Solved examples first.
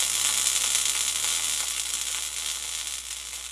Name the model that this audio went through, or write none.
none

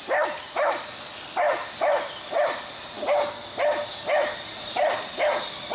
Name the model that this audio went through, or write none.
none